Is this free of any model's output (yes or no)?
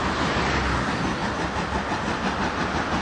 yes